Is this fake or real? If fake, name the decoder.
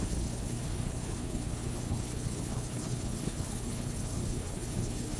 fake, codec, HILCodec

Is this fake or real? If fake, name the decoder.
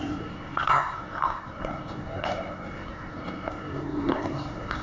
fake, codec, SNAC